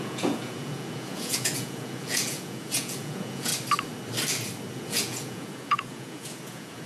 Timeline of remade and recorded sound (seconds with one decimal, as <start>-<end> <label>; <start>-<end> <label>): 0.0-3.5 remade; 3.5-4.7 recorded; 4.7-6.9 remade